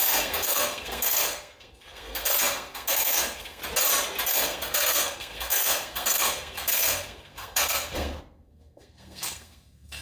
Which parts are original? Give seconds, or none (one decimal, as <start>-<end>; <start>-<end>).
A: 3.6-4.3